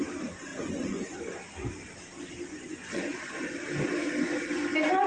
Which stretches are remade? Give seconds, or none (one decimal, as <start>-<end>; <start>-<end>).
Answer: 0.5-1.4; 2.5-3.3